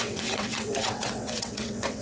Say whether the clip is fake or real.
fake